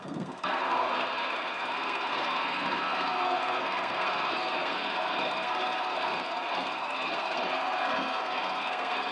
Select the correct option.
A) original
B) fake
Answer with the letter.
B